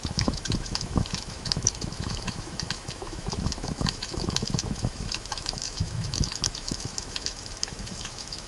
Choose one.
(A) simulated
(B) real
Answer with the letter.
A